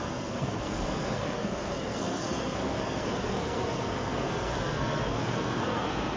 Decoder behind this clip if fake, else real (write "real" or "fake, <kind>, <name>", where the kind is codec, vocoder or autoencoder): fake, codec, SNAC